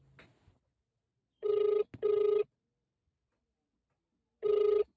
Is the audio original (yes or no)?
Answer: yes